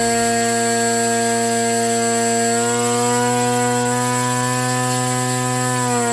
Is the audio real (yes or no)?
yes